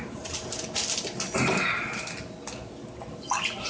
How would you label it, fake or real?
real